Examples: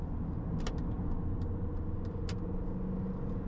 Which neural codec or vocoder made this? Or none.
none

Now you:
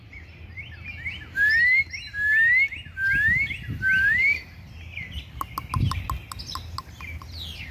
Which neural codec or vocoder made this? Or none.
none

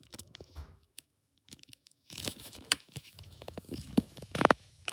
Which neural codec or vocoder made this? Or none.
autoencoder, DAC-VAE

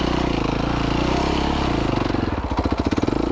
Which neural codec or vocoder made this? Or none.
none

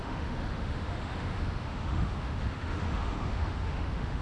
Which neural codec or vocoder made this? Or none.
autoencoder, DAC-VAE